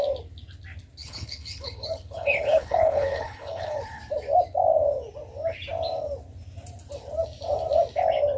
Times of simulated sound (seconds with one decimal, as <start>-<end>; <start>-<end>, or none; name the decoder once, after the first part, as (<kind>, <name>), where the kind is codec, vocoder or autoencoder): 1.0-4.0 (codec, HILCodec)